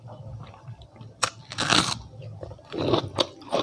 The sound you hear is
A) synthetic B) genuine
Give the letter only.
B